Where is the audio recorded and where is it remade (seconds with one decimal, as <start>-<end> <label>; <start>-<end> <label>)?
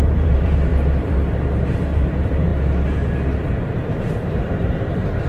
0.0-0.7 remade; 0.7-1.7 recorded; 1.7-2.5 remade; 2.5-4.0 recorded; 4.0-5.3 remade